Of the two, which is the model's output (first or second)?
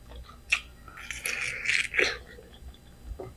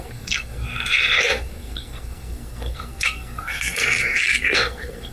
second